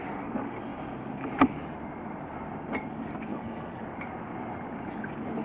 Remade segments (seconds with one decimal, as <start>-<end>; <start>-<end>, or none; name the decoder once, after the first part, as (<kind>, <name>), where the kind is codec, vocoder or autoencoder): 3.3-3.8 (codec, HILCodec)